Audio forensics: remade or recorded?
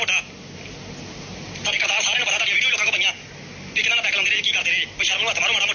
recorded